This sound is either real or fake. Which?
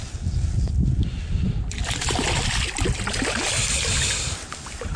real